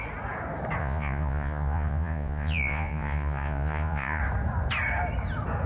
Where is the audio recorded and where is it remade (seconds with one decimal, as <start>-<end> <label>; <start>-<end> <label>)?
0.0-0.8 recorded; 0.8-4.2 remade; 4.2-5.7 recorded